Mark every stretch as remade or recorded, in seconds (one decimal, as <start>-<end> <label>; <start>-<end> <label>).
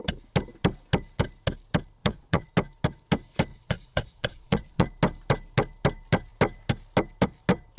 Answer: 0.0-2.0 recorded; 2.0-2.5 remade; 2.5-3.5 recorded; 3.5-4.9 remade; 4.9-7.8 recorded